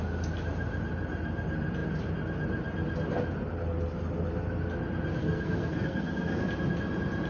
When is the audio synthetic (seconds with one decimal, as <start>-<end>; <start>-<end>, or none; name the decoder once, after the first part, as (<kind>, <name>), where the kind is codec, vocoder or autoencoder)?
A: 5.2-6.4 (codec, SNAC)